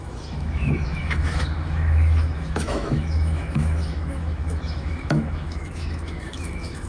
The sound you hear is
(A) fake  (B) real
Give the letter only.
A